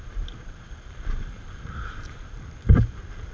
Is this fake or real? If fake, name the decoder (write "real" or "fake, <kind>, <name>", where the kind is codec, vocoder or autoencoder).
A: fake, vocoder, BigVGAN v2